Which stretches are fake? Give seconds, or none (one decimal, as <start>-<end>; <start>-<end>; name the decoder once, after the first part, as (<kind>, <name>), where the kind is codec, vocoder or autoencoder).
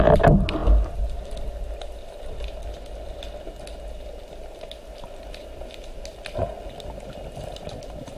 none